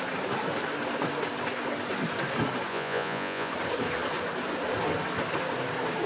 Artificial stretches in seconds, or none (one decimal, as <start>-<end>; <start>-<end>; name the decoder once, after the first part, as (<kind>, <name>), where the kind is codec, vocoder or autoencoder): 2.7-3.5 (vocoder, Vocos)